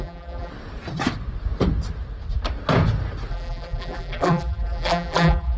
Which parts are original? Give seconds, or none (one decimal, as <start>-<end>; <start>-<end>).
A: 0.5-3.3